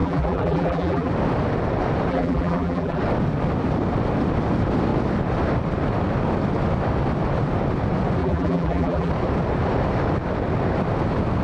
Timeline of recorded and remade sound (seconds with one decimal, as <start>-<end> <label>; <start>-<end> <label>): 0.0-1.1 remade; 1.1-2.1 recorded; 2.1-3.0 remade; 3.0-8.2 recorded; 8.2-9.1 remade; 9.1-11.4 recorded